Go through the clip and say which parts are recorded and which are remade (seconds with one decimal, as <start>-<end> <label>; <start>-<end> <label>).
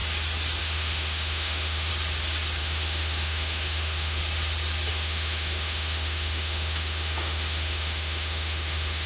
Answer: 0.0-0.6 recorded; 0.6-1.9 remade; 1.9-2.6 recorded; 2.6-4.2 remade; 4.2-4.9 recorded; 4.9-9.1 remade